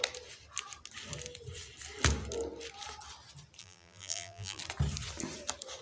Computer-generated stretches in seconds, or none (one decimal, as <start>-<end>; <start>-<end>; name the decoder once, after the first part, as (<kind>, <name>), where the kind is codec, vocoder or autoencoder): 3.6-4.6 (vocoder, BigVGAN v2)